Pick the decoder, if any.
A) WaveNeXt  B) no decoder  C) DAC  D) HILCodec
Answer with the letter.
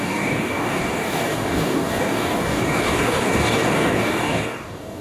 C